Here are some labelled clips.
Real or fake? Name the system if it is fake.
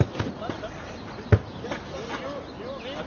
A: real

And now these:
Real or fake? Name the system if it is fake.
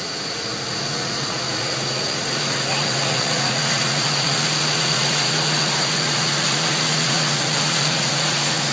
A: fake, vocoder, Vocos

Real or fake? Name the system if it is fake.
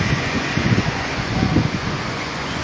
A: fake, vocoder, Vocos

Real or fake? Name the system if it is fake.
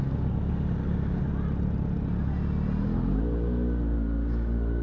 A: real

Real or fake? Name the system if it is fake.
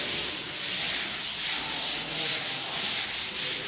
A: real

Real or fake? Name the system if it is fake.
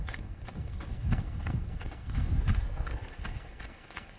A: fake, codec, SNAC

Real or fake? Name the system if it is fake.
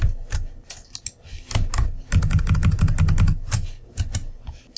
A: real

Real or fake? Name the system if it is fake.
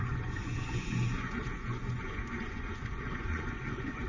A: fake, vocoder, Vocos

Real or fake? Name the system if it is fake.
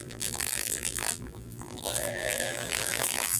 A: fake, vocoder, BigVGAN v2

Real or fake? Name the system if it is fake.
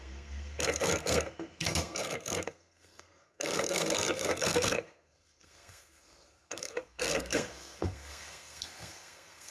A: fake, codec, SNAC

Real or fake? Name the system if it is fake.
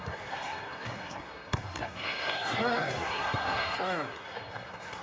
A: fake, codec, SNAC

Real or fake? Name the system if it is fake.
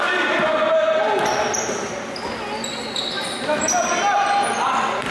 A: real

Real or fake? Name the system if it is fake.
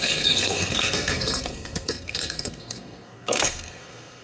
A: fake, codec, SNAC